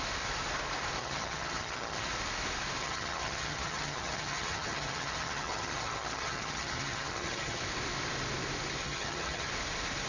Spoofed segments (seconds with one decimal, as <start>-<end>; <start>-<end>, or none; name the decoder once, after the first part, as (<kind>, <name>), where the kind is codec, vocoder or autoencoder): 1.0-2.1 (vocoder, HiFi-GAN); 2.8-7.6; 8.8-9.5